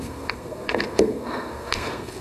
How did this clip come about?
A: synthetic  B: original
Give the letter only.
A